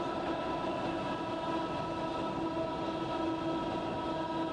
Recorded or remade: recorded